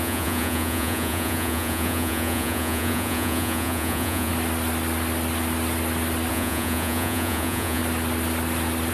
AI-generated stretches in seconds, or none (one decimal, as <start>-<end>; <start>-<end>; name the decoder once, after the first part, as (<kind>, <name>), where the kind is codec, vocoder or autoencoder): 0.0-4.3 (vocoder, Vocos); 6.3-7.8